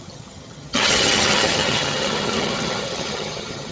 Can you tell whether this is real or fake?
fake